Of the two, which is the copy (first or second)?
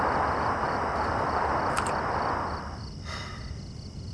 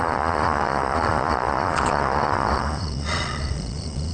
second